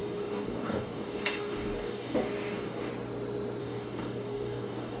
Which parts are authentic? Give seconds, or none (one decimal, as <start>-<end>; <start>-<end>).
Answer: 2.9-3.6